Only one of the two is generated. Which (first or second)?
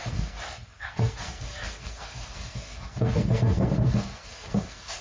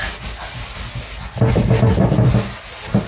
first